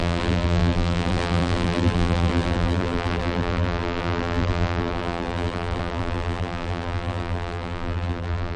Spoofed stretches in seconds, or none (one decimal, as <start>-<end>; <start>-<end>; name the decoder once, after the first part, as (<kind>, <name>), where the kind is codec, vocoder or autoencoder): 0.0-8.6 (vocoder, BigVGAN v2)